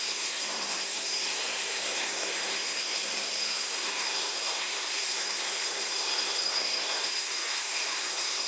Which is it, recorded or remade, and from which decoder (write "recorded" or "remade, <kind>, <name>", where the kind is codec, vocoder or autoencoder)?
remade, codec, SNAC